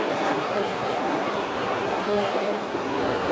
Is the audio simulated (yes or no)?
yes